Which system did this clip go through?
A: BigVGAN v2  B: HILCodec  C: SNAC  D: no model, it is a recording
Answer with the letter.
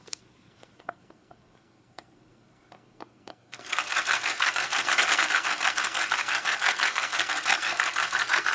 C